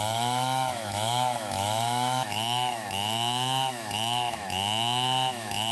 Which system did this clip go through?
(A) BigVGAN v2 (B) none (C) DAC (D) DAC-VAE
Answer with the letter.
D